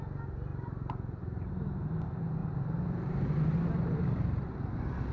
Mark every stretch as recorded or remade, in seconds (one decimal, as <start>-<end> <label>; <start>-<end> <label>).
0.0-0.5 recorded; 0.5-1.5 remade; 1.5-2.4 recorded; 2.4-3.8 remade; 3.8-5.1 recorded